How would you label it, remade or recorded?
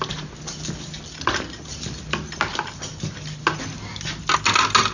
recorded